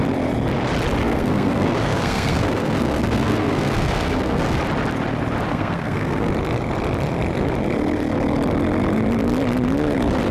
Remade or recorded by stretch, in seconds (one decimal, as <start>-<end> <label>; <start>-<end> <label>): 0.0-1.0 recorded; 1.0-4.6 remade; 4.6-5.5 recorded; 5.5-6.3 remade; 6.3-10.3 recorded